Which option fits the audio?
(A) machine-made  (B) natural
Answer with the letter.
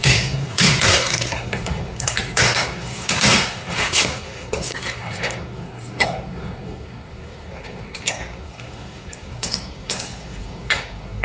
A